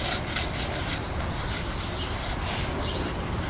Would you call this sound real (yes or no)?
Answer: yes